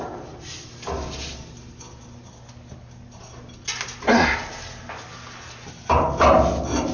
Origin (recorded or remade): recorded